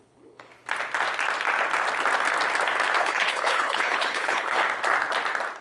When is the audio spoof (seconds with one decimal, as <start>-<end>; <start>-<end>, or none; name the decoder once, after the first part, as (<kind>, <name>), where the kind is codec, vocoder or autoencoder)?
0.0-0.5 (codec, HILCodec); 3.0-4.6